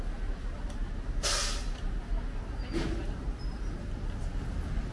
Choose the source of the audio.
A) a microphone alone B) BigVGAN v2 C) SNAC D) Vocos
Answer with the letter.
A